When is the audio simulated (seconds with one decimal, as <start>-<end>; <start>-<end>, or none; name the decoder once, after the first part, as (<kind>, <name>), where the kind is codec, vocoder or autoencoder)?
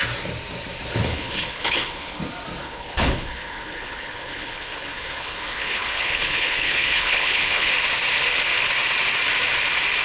1.0-2.2 (codec, HILCodec); 2.6-7.7